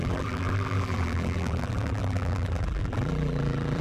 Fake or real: fake